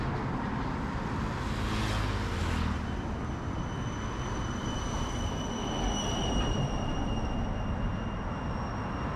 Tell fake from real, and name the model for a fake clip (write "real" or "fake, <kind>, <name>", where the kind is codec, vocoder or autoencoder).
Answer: real